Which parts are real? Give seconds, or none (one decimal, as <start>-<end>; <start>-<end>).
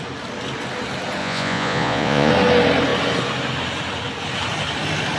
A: 0.0-1.2; 2.3-5.2